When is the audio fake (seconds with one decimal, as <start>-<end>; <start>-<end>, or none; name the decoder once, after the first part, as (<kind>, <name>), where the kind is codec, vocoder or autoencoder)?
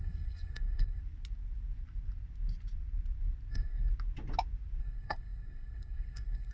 0.0-1.0 (codec, SNAC); 3.5-3.9; 4.8-6.5